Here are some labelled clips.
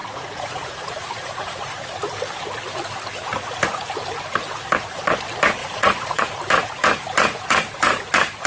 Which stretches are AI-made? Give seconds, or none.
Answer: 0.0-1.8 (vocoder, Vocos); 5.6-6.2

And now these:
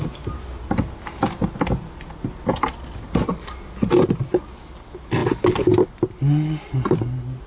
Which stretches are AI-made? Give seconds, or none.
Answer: none

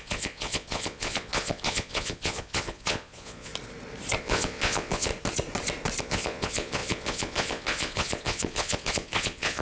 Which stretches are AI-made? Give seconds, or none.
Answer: 0.0-3.5 (vocoder, Vocos); 4.2-5.1; 6.0-9.6

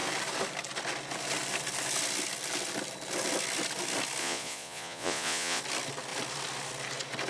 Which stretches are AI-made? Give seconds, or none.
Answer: 4.2-5.6 (vocoder, Vocos)